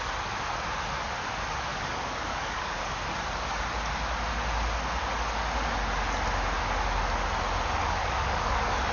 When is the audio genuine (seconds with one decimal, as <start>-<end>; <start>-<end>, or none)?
0.0-1.7; 2.9-7.8